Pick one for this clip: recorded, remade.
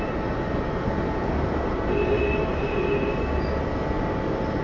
recorded